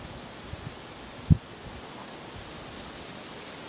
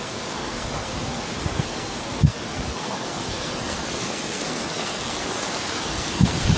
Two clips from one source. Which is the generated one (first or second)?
second